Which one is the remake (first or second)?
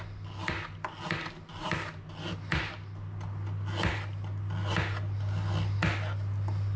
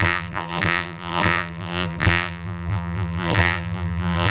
second